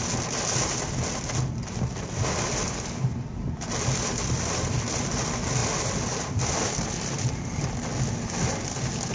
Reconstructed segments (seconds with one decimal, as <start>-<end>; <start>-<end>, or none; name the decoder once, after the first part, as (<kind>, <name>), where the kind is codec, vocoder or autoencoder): none